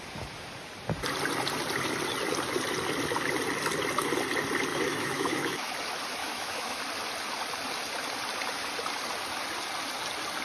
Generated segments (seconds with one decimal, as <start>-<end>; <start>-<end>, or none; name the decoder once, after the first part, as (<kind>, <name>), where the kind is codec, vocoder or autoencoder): 4.7-5.7 (autoencoder, DAC-VAE); 6.2-6.8